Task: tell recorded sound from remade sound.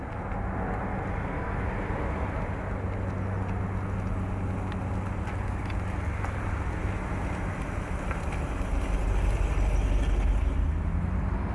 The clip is recorded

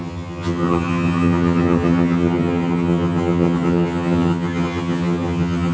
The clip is remade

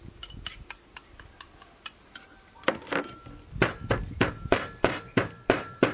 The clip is recorded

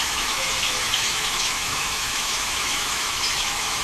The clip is remade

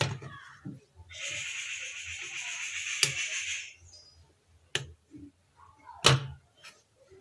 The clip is recorded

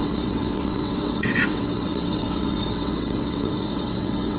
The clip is remade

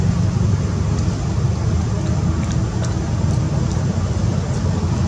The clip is recorded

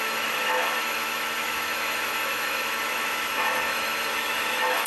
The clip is remade